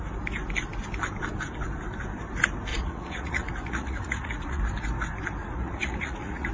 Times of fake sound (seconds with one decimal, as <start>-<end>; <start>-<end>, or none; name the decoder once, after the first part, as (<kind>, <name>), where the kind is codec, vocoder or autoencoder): 2.7-4.6 (vocoder, Vocos); 5.4-6.5